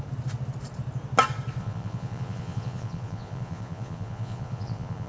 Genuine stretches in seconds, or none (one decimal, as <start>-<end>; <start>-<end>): 0.0-1.6